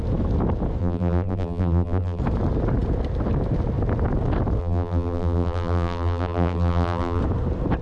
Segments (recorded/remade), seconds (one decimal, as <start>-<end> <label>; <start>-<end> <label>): 0.0-0.8 recorded; 0.8-2.2 remade; 2.2-4.6 recorded; 4.6-7.2 remade; 7.2-7.8 recorded